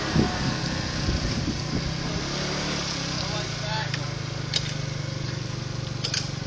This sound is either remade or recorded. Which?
recorded